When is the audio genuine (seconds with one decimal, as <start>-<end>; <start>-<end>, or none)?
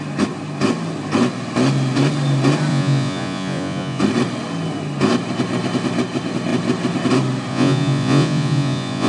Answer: 0.0-2.7; 4.0-7.5